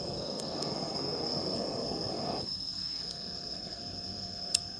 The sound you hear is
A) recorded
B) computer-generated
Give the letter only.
B